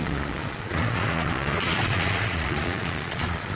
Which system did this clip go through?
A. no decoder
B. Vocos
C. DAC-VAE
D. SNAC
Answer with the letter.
B